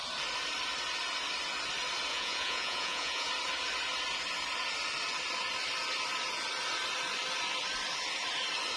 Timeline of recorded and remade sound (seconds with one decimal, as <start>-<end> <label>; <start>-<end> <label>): 0.0-2.1 recorded; 2.1-3.3 remade; 3.3-8.8 recorded